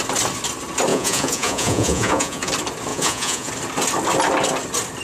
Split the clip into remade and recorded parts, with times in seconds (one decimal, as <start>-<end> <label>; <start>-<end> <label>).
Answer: 0.0-0.9 recorded; 0.9-2.5 remade; 2.5-2.9 recorded; 2.9-3.5 remade; 3.5-5.0 recorded